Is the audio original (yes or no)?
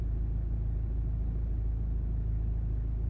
yes